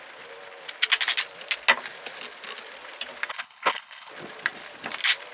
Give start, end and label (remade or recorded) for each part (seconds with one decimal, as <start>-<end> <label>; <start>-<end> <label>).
0.0-3.3 recorded; 3.3-4.1 remade; 4.1-5.3 recorded